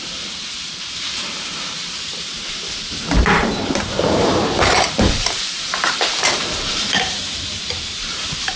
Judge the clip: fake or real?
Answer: fake